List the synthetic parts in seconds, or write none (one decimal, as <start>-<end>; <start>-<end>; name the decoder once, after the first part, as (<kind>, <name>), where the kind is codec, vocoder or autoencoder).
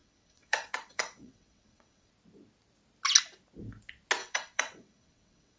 0.0-2.1 (vocoder, WaveNeXt); 4.2-5.6